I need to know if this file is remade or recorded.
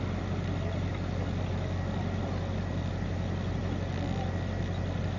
recorded